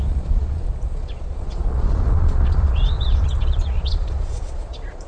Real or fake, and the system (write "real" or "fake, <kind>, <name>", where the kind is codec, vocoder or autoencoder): fake, vocoder, Vocos